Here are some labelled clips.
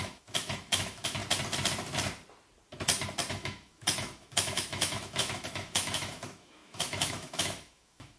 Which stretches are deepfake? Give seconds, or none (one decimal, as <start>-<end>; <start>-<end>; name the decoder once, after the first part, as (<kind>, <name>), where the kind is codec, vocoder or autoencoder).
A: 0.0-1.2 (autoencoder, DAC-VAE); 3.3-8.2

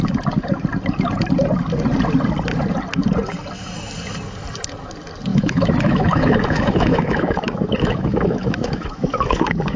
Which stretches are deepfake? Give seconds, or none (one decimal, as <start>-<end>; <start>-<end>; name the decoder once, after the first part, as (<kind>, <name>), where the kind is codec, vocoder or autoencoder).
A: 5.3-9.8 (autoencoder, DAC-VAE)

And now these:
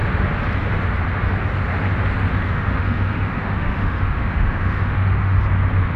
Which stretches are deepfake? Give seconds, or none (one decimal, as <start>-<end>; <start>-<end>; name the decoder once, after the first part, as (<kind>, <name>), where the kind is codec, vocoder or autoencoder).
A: 2.3-5.4 (autoencoder, DAC-VAE)

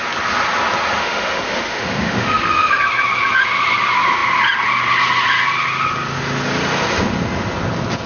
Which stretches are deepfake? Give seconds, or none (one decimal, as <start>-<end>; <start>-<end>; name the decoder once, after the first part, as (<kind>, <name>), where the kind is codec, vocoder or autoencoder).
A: 1.0-2.8 (autoencoder, DAC-VAE)